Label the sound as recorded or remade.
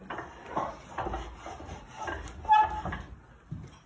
recorded